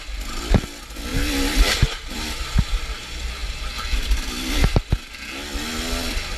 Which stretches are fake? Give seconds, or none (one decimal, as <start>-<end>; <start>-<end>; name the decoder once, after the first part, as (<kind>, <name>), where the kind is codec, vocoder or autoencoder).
none